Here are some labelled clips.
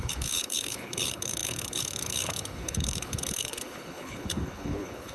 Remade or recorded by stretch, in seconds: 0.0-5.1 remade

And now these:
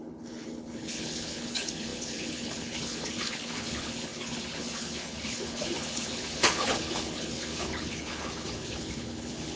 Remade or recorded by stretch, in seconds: 0.0-9.6 remade